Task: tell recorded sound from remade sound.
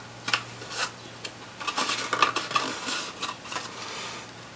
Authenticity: recorded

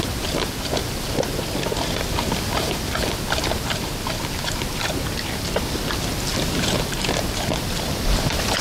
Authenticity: recorded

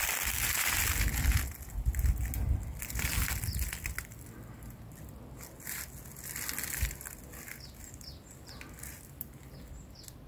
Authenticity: recorded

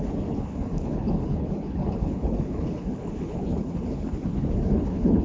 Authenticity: remade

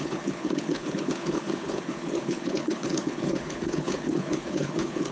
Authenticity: remade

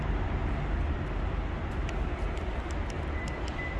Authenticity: recorded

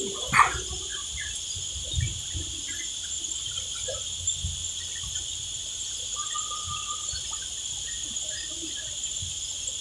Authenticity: recorded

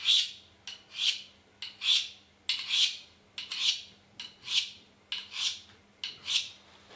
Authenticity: recorded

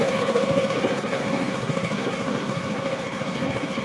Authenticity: remade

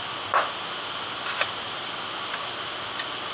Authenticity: recorded